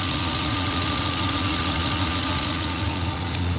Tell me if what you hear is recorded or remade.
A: remade